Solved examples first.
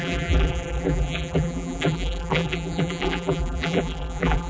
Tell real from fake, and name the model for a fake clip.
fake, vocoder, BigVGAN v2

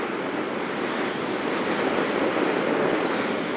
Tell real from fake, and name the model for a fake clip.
real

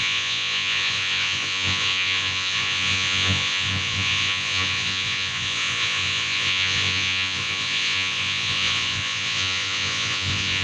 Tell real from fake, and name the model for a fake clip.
fake, vocoder, Vocos